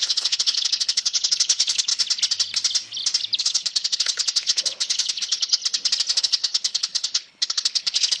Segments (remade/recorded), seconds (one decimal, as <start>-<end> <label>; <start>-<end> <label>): 0.0-1.9 remade; 1.9-3.4 recorded; 3.4-5.6 remade; 5.6-6.2 recorded; 6.2-8.2 remade